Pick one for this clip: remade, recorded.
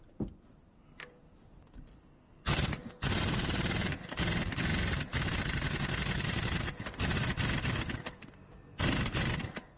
recorded